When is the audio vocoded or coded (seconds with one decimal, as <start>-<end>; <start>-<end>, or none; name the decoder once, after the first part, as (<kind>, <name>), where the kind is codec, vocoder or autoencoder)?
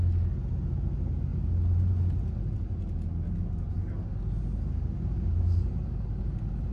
none